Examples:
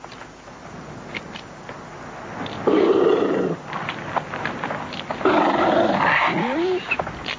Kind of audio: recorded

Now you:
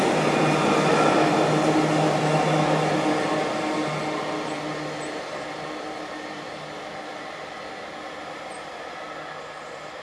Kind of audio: recorded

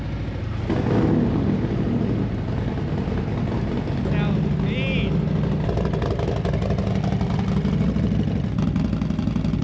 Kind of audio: recorded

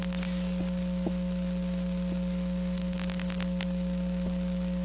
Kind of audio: recorded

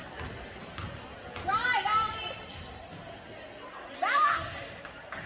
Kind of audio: recorded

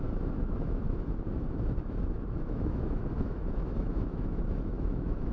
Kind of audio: remade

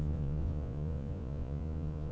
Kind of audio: remade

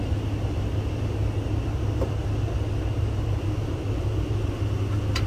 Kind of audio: recorded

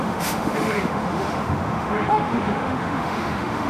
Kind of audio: remade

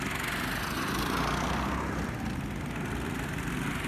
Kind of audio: recorded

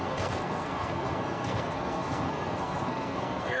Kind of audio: remade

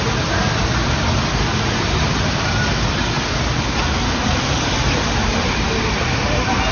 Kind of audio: recorded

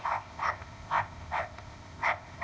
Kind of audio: remade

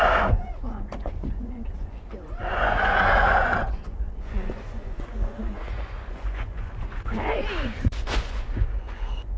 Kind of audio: remade